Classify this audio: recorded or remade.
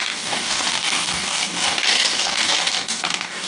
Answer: remade